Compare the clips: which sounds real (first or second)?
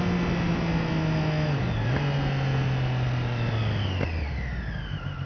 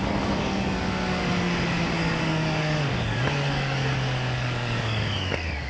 first